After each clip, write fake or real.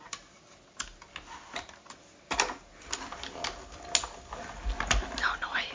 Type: real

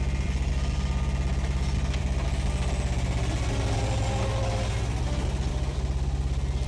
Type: real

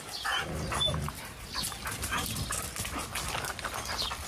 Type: real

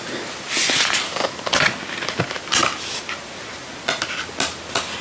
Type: real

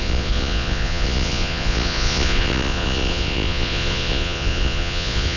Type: fake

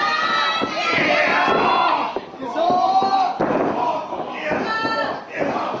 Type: real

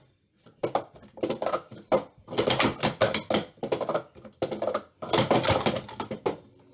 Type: real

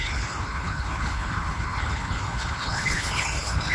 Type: fake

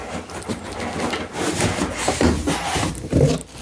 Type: real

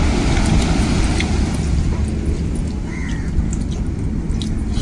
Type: real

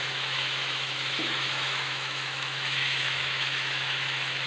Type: fake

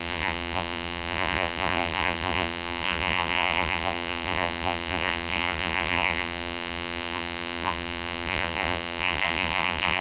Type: fake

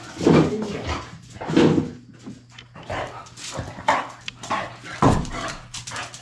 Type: real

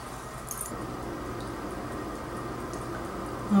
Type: real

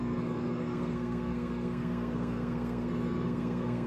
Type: fake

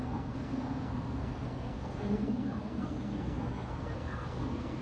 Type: fake